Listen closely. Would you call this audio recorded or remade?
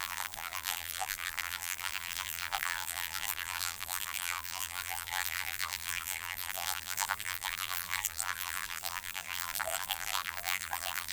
remade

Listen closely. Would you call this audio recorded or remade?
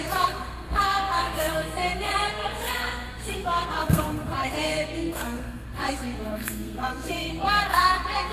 remade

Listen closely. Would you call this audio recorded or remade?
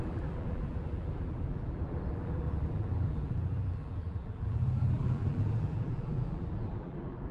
remade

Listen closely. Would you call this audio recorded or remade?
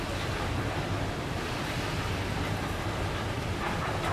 recorded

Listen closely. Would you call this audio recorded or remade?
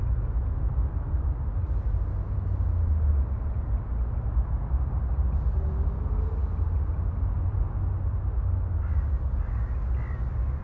recorded